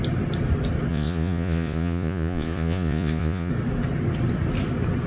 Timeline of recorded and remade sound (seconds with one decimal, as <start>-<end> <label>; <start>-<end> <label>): 0.0-0.9 recorded; 0.9-3.5 remade; 3.5-5.1 recorded